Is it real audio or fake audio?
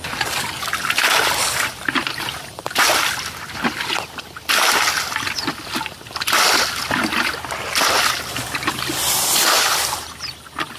real